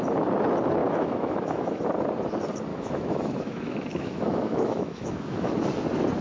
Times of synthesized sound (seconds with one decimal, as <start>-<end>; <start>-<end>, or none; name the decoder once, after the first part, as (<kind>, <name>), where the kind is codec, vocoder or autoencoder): 0.8-1.8 (autoencoder, DAC-VAE); 2.7-5.5